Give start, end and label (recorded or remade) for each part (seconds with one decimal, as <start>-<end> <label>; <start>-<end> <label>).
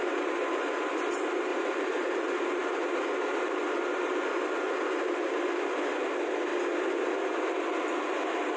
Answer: 0.0-1.5 recorded; 1.5-2.1 remade; 2.1-8.6 recorded